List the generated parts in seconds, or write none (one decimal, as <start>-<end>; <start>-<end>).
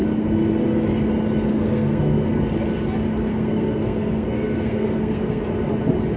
1.5-2.3; 3.3-5.4